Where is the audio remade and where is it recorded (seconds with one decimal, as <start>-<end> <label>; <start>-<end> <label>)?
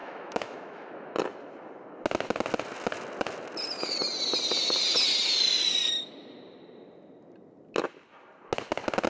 0.0-0.9 remade; 0.9-9.1 recorded